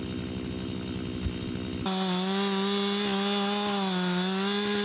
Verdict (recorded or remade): recorded